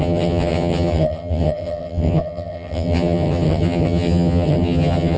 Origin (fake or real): fake